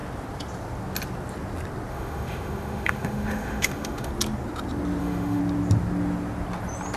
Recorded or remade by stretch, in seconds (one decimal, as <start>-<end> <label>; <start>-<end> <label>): 0.0-1.9 recorded; 1.9-4.1 remade; 4.1-5.0 recorded; 5.0-5.4 remade; 5.4-7.0 recorded